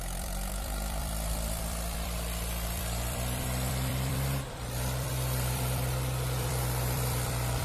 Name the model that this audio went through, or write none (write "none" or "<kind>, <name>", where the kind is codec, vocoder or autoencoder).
vocoder, BigVGAN v2